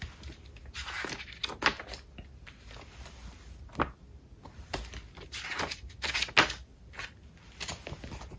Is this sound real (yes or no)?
yes